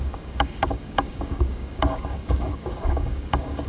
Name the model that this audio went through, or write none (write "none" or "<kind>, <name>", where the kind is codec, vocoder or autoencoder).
codec, DAC